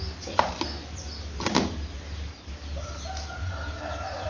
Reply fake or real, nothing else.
real